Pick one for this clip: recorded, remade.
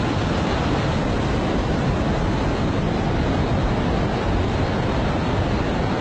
recorded